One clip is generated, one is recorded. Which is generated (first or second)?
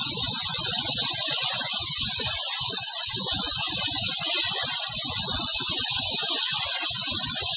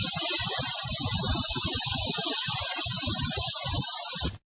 first